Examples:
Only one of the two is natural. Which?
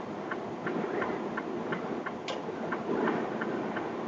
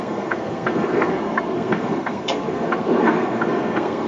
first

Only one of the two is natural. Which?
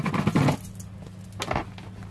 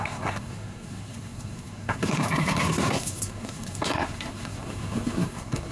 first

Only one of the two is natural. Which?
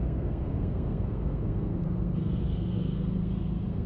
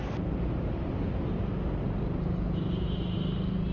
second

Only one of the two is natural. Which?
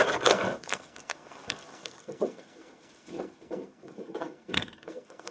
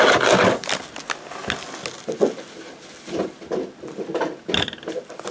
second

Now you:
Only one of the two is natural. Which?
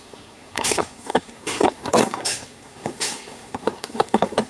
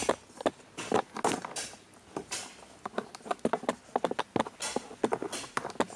second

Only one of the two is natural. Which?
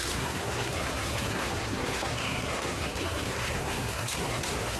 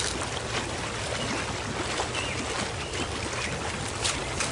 second